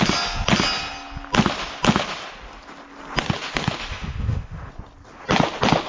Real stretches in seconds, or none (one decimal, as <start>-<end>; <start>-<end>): 0.0-3.9; 4.7-5.9

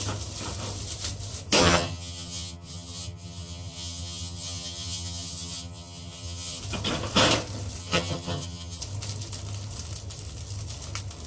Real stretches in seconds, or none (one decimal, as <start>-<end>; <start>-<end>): 0.0-1.6; 6.6-7.8; 8.8-11.3

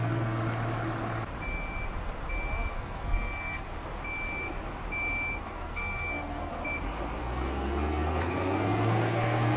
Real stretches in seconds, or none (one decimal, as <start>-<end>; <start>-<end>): 0.4-2.7; 3.7-5.4; 6.5-7.2

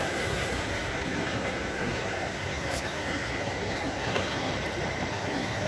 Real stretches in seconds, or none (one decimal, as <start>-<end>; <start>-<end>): 4.5-5.1